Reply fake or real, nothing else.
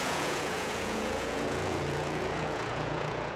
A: fake